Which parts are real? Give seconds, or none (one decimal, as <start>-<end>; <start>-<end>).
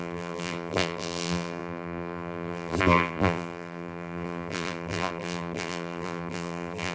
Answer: none